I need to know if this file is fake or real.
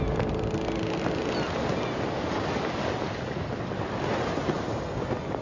real